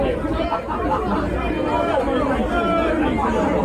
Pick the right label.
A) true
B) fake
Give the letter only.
A